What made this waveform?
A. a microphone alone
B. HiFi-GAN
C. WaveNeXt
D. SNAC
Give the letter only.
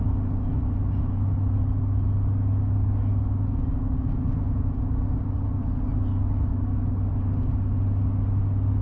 A